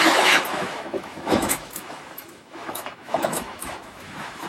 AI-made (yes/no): yes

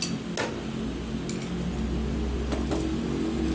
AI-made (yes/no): no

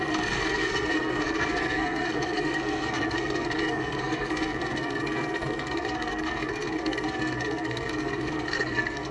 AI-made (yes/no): yes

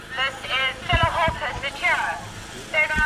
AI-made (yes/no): no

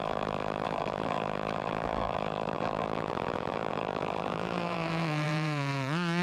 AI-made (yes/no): yes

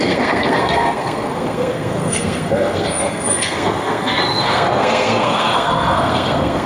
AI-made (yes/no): yes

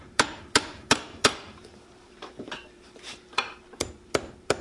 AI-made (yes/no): yes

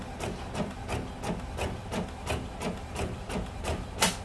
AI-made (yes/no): no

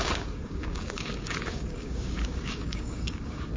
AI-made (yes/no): yes